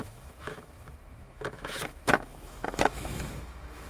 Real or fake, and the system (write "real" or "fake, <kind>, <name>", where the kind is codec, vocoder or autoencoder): fake, autoencoder, DAC-VAE